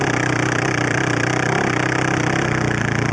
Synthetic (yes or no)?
no